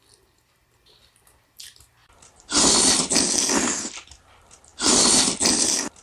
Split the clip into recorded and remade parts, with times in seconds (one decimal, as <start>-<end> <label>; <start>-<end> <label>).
0.0-6.0 recorded